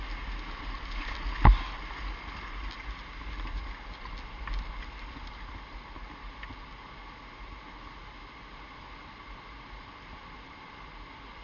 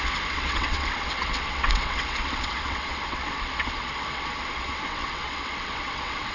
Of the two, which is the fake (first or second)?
second